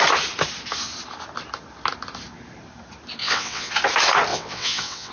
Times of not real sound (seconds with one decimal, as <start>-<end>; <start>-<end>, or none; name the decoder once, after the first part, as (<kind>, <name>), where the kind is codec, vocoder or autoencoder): 3.2-3.7 (vocoder, WaveNeXt); 4.3-5.1